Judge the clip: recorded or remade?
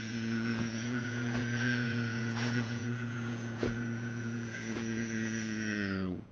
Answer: remade